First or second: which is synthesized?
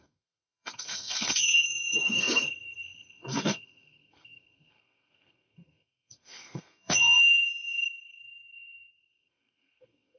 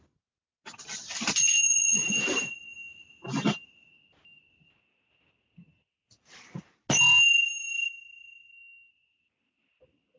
first